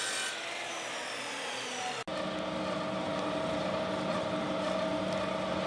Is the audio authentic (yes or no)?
yes